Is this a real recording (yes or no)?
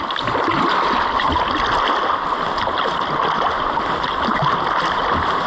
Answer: yes